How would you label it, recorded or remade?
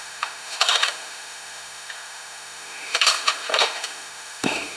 remade